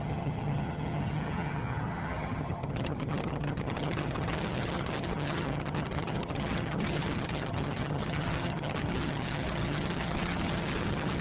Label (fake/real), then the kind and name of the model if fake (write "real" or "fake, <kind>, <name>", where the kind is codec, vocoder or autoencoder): fake, vocoder, HiFi-GAN